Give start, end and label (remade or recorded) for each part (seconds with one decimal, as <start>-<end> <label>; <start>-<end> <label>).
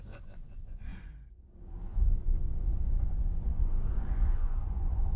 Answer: 0.0-5.2 remade